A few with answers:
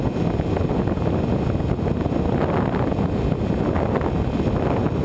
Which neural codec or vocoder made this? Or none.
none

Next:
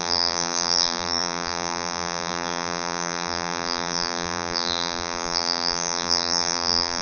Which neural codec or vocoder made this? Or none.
vocoder, BigVGAN v2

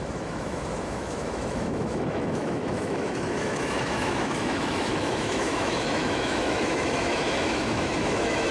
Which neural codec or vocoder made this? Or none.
autoencoder, DAC-VAE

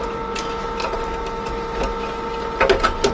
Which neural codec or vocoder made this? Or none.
none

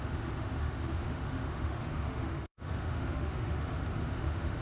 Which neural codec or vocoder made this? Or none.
autoencoder, DAC-VAE